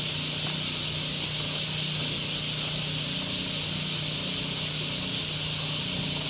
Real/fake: real